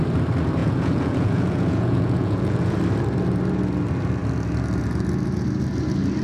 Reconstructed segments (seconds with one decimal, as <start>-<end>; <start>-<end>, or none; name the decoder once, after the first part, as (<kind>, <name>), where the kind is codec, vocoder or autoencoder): 0.6-2.8 (vocoder, Vocos)